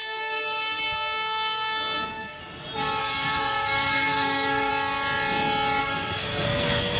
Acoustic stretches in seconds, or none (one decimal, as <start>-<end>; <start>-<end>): 2.4-3.0; 4.7-5.8